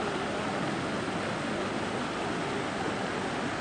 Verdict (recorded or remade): recorded